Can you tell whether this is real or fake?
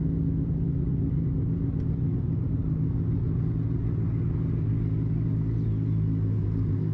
real